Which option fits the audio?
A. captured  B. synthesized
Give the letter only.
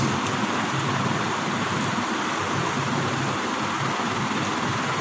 A